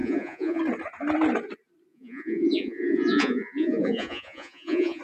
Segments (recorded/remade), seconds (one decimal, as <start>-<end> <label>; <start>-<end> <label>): 0.0-0.6 remade; 0.6-1.9 recorded; 1.9-5.0 remade